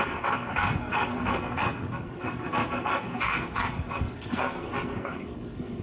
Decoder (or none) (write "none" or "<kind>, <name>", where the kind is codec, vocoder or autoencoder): codec, SNAC